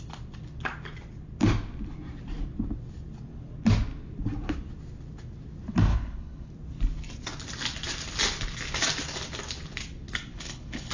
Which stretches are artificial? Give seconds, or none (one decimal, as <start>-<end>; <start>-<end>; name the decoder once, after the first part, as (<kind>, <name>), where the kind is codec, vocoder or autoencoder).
5.9-6.5 (codec, HILCodec); 10.3-10.9